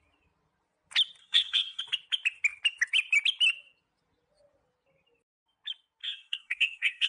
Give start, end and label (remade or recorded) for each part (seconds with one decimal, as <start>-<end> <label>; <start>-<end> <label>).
0.0-1.2 recorded; 1.2-1.8 remade; 1.8-6.0 recorded; 6.0-7.1 remade